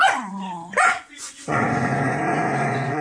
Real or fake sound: fake